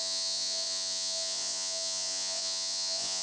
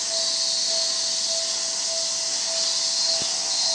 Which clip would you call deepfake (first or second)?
first